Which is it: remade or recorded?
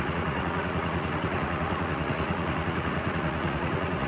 remade